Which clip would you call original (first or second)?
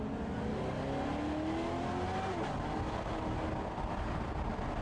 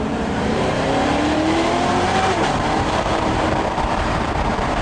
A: first